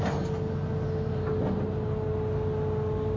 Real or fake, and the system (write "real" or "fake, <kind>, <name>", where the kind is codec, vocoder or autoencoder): real